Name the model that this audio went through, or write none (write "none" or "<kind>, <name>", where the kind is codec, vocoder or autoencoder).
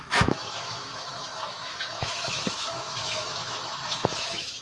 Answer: autoencoder, DAC-VAE